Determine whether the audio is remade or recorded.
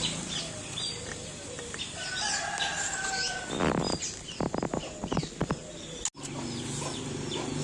recorded